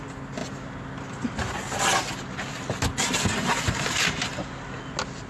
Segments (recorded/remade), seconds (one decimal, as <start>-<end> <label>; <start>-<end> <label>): 0.0-5.3 recorded